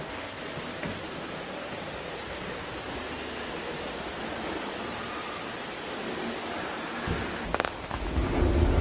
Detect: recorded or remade recorded